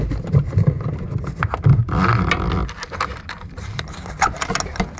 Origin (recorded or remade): recorded